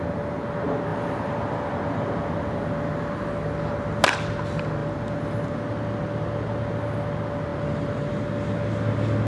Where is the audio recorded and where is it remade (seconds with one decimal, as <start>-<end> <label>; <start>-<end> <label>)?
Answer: 0.0-0.9 recorded; 0.9-2.3 remade; 2.3-4.8 recorded; 4.8-5.6 remade; 5.6-7.5 recorded; 7.5-8.1 remade; 8.1-9.3 recorded